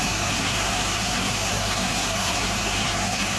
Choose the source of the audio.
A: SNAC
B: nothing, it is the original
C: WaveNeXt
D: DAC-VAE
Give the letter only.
A